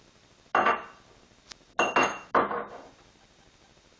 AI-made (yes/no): no